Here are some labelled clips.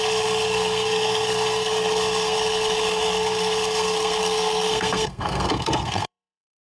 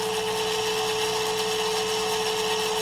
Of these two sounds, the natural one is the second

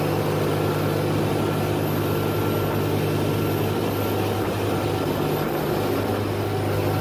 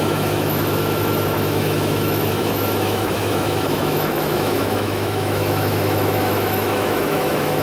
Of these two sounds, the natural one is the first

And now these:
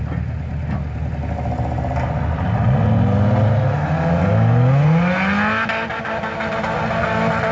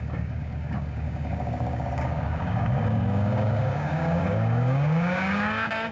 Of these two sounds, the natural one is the first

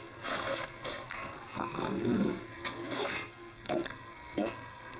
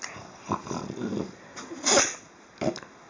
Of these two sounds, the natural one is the second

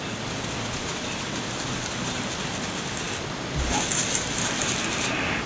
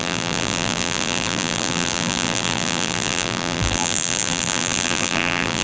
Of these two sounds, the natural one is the first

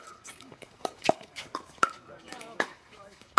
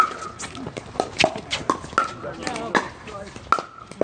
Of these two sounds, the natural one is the second